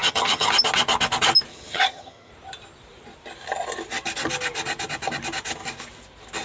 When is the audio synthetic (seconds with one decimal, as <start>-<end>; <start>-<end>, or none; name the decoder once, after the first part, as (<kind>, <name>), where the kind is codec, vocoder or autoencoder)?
0.0-0.5 (vocoder, HiFi-GAN); 1.5-2.3